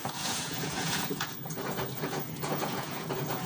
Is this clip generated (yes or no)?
yes